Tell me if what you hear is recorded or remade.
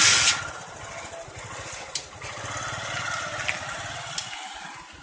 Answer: recorded